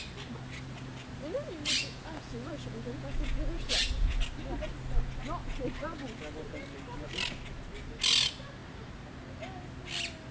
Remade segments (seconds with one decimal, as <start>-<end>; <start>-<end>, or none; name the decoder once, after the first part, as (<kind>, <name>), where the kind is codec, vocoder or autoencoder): 1.8-4.2 (vocoder, Vocos)

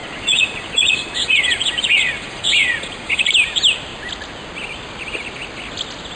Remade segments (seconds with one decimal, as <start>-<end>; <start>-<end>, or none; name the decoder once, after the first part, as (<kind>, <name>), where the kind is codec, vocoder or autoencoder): 0.0-3.2 (vocoder, Vocos)